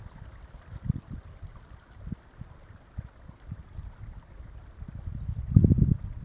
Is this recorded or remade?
recorded